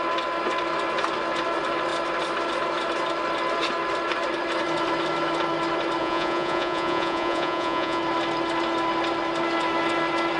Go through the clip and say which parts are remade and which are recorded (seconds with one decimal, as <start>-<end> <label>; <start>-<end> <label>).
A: 0.0-6.0 recorded; 6.0-8.0 remade; 8.0-10.4 recorded